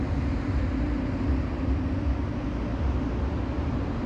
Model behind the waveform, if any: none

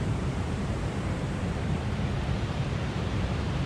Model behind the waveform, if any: vocoder, BigVGAN v2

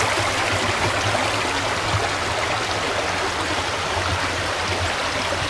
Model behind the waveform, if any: none